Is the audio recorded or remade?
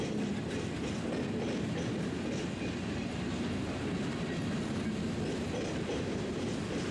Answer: recorded